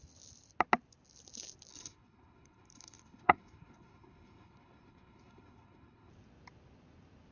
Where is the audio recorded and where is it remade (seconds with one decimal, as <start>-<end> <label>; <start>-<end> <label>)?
0.0-1.7 recorded; 1.7-6.1 remade; 6.1-7.3 recorded